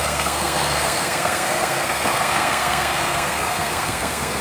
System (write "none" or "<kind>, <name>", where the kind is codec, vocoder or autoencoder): codec, SNAC